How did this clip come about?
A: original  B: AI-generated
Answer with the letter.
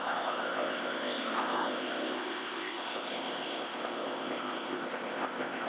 B